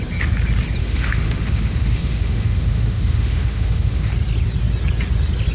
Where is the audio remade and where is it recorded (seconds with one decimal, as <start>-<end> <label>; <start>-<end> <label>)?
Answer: 0.0-0.8 recorded; 0.8-4.1 remade; 4.1-5.5 recorded